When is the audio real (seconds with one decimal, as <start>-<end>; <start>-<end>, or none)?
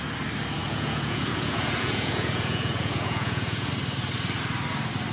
0.0-0.6; 3.7-5.1